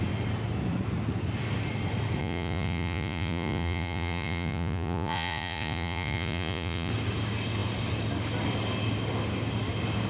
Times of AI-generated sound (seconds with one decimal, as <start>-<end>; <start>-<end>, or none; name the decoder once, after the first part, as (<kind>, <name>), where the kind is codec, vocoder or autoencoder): 2.2-6.9 (vocoder, Vocos)